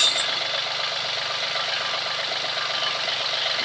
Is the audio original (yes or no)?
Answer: yes